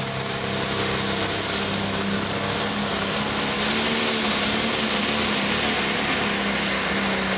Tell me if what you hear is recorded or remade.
recorded